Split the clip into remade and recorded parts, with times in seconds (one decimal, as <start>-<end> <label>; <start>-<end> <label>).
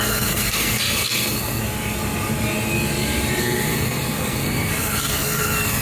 0.0-1.6 remade; 1.6-3.4 recorded; 3.4-5.8 remade